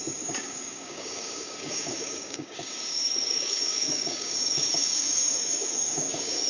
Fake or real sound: fake